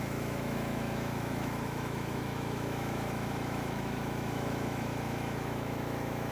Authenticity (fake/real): fake